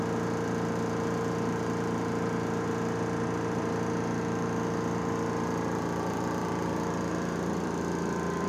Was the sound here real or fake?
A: real